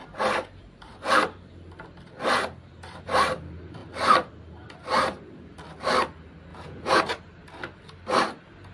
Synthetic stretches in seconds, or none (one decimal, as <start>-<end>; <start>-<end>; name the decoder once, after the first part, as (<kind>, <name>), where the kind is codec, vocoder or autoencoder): 6.5-7.0 (vocoder, Vocos)